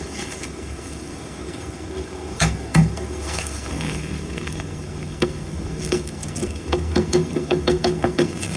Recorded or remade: remade